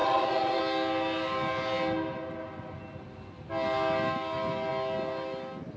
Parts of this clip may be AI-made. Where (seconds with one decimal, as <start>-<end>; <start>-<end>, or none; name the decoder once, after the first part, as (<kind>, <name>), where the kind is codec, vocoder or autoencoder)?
0.0-0.6 (vocoder, Vocos)